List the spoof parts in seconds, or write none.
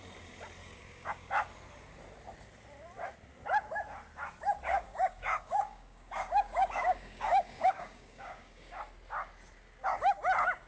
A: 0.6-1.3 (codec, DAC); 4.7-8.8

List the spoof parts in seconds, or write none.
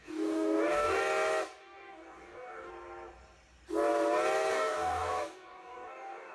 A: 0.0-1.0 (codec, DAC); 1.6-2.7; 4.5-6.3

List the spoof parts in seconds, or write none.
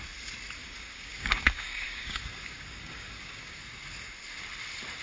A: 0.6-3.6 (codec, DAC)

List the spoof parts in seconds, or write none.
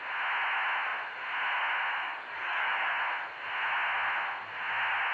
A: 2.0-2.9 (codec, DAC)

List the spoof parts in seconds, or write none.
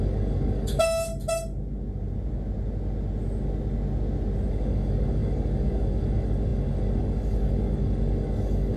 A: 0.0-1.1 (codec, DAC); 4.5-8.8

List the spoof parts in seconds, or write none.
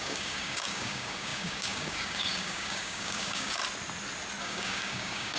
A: 0.0-3.6 (codec, DAC); 4.4-5.4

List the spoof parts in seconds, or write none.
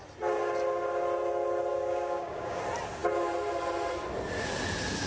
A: 1.7-2.6 (codec, DAC)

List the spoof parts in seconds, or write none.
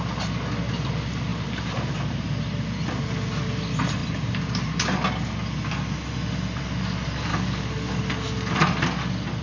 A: 7.3-8.0 (codec, DAC)